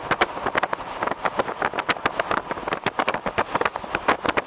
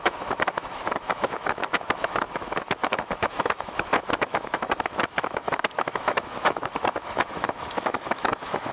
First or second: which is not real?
second